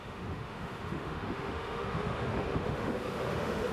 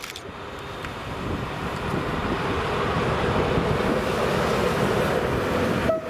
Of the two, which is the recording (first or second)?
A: second